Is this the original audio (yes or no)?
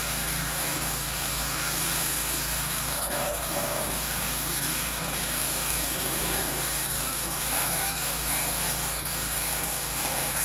no